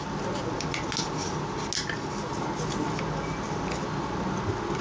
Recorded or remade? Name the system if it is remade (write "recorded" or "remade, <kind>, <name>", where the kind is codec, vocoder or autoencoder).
recorded